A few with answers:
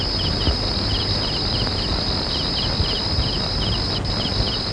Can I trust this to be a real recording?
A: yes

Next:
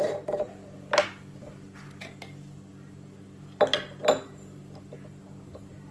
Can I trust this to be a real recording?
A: yes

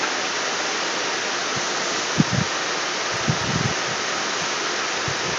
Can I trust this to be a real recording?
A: yes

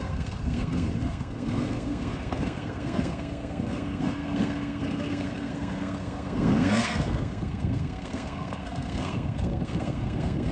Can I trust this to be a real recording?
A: no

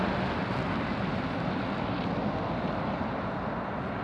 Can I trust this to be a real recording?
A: yes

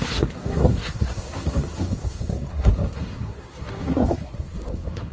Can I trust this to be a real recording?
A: no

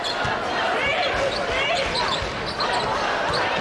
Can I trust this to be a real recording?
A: yes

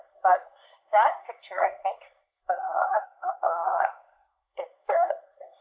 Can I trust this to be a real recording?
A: no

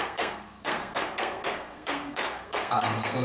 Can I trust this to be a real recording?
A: no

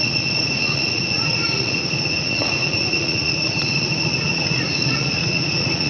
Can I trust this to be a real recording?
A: no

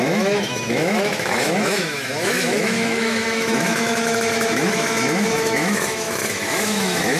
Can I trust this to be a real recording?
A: no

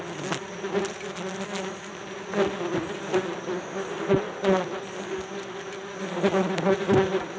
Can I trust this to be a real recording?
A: yes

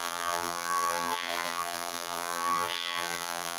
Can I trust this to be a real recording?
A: no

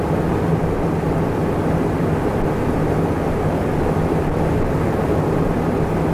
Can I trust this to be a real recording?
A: yes